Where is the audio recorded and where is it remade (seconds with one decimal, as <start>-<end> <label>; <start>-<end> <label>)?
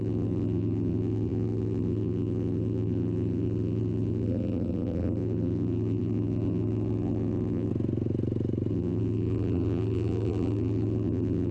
0.0-7.7 remade; 7.7-8.7 recorded; 8.7-11.5 remade